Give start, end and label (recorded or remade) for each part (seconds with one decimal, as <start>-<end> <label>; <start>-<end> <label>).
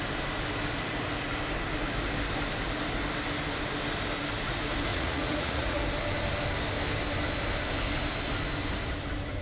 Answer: 0.0-4.9 recorded; 4.9-5.8 remade; 5.8-9.4 recorded